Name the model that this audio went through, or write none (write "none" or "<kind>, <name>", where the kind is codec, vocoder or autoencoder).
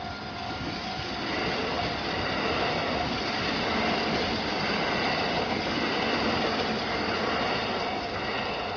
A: none